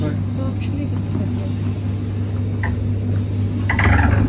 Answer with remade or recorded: recorded